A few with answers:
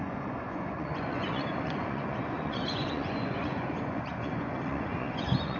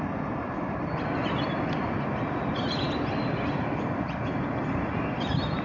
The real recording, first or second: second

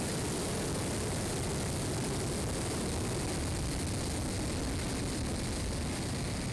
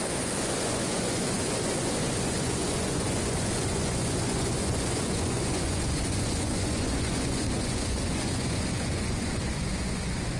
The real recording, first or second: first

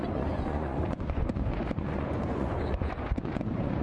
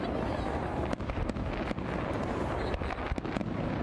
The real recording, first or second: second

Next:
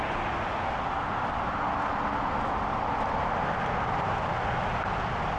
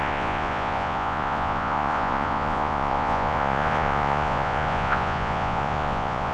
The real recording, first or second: first